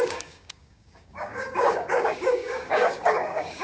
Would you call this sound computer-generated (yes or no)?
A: yes